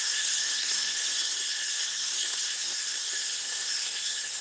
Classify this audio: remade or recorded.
remade